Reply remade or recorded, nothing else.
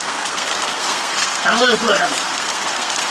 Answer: remade